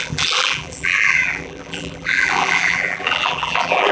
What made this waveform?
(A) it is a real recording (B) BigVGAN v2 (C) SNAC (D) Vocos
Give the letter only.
B